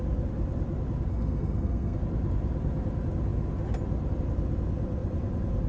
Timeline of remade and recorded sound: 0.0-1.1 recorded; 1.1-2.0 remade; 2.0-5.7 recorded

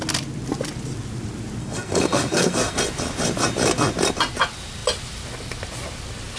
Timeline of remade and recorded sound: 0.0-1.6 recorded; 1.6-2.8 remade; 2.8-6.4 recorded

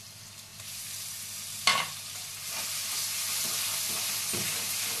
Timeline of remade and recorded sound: 0.0-5.0 recorded

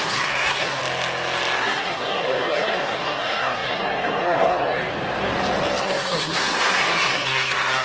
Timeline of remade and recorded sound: 0.0-0.8 remade; 0.8-1.6 recorded; 1.6-4.8 remade; 4.8-5.8 recorded; 5.8-7.8 remade

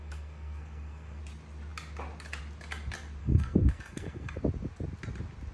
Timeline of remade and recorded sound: 0.0-1.2 remade; 1.2-3.2 recorded; 3.2-4.4 remade; 4.4-5.5 recorded